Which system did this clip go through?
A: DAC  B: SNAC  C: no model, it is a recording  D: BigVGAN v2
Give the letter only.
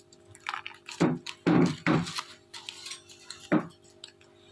C